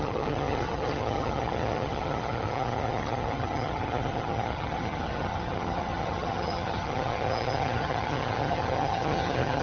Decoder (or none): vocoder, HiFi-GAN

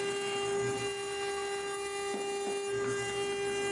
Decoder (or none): none